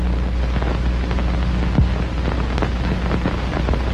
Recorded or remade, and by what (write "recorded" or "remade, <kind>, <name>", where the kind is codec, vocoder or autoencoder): recorded